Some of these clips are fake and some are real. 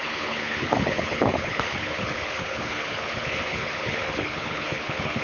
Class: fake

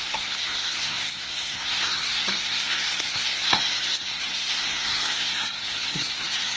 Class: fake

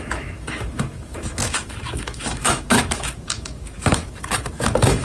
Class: fake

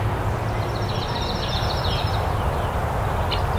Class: real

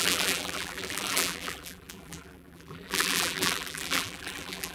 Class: fake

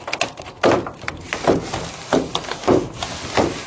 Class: real